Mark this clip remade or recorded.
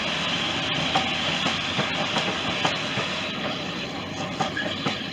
recorded